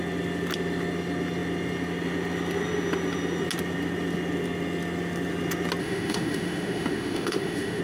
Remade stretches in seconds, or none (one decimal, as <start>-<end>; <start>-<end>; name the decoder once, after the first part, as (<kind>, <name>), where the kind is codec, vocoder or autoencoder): 5.8-7.8 (autoencoder, DAC-VAE)